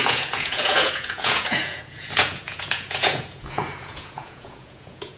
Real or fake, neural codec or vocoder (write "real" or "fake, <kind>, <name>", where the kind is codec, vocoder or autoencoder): fake, vocoder, Vocos